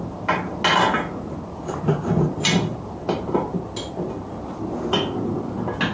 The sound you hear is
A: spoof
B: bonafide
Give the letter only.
B